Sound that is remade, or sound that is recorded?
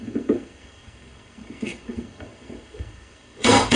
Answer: remade